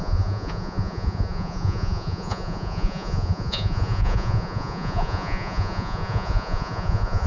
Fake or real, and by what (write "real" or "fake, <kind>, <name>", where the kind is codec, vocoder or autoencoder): fake, vocoder, Vocos